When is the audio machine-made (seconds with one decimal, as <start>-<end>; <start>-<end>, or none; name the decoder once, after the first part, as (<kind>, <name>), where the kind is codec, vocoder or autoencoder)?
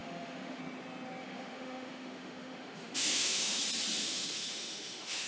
0.0-0.6 (autoencoder, DAC-VAE); 1.2-3.6; 4.0-5.3